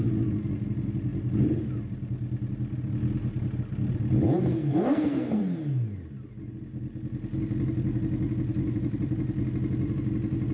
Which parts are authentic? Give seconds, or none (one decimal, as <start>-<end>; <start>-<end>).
0.0-4.5; 5.4-10.5